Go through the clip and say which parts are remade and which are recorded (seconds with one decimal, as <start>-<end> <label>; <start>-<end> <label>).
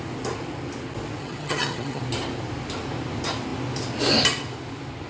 0.0-1.2 recorded; 1.2-2.0 remade; 2.0-5.1 recorded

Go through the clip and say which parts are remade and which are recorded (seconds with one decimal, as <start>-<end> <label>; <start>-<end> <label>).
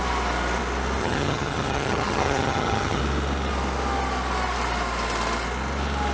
0.0-1.0 recorded; 1.0-3.0 remade; 3.0-6.1 recorded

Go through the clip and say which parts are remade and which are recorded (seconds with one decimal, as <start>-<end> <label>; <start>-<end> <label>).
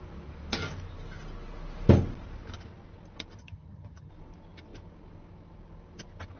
0.0-3.4 recorded; 3.4-4.1 remade; 4.1-6.4 recorded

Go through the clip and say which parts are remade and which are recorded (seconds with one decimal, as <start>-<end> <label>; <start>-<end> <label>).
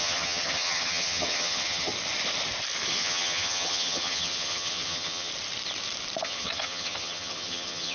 0.0-1.9 remade; 1.9-2.9 recorded; 2.9-5.3 remade; 5.3-6.2 recorded; 6.2-7.9 remade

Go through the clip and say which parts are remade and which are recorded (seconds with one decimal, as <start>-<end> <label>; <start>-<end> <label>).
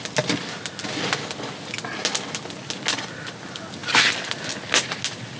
0.0-5.4 recorded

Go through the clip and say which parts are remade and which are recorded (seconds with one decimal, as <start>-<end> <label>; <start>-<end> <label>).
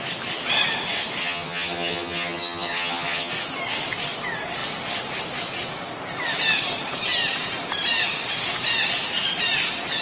0.0-1.2 recorded; 1.2-3.3 remade; 3.3-10.0 recorded